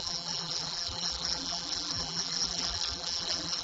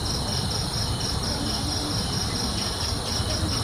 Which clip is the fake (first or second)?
first